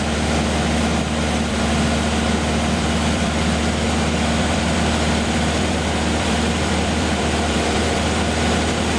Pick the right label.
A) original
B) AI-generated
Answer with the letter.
B